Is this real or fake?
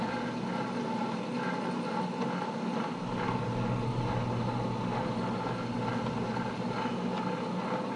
real